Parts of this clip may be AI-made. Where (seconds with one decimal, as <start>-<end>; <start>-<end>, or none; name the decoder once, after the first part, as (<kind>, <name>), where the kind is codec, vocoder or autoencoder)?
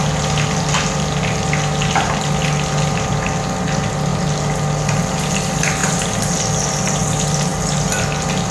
none